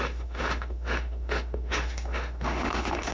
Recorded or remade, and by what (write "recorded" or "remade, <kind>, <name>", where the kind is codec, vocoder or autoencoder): remade, autoencoder, DAC-VAE